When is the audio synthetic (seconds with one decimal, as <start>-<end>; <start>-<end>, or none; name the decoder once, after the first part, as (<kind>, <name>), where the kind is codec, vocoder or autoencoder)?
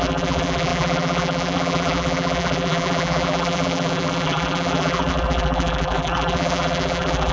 0.0-7.3 (vocoder, BigVGAN v2)